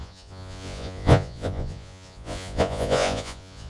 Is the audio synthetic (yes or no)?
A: yes